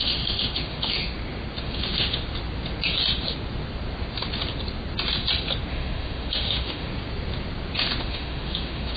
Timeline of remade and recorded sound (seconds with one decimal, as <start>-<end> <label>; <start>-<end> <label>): 0.0-1.0 remade; 1.0-1.6 recorded; 1.6-2.2 remade; 2.2-5.7 recorded; 5.7-6.9 remade; 6.9-8.0 recorded; 8.0-9.0 remade